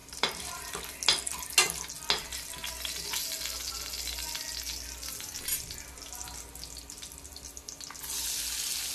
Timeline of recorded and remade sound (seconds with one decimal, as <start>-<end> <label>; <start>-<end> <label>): 0.0-0.7 remade; 0.7-8.9 recorded

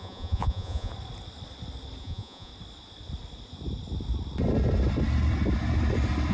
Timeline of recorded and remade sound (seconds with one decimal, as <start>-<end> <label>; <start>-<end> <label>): 0.0-0.9 remade; 0.9-2.0 recorded; 2.0-2.5 remade; 2.5-6.3 recorded

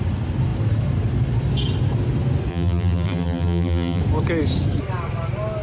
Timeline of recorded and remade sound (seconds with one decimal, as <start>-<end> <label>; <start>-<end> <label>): 0.0-2.5 recorded; 2.5-4.0 remade; 4.0-5.6 recorded

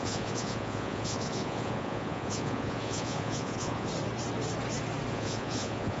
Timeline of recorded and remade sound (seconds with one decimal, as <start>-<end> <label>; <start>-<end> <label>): 0.0-3.9 remade; 3.9-5.1 recorded; 5.1-6.0 remade

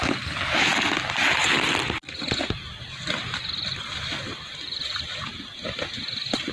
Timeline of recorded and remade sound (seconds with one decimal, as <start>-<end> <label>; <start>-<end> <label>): 0.0-4.5 recorded; 4.5-5.3 remade; 5.3-6.5 recorded

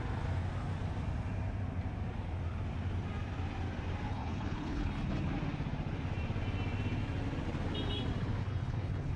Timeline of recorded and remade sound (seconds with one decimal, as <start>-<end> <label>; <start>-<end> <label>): 0.0-4.1 recorded; 4.1-5.3 remade; 5.3-8.4 recorded; 8.4-9.2 remade

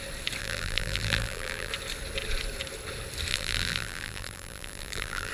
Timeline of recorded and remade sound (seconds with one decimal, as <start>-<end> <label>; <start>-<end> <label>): 0.0-0.4 recorded; 0.4-1.7 remade; 1.7-3.3 recorded; 3.3-5.3 remade